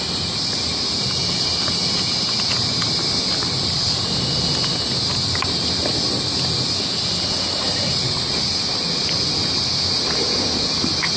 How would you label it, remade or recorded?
recorded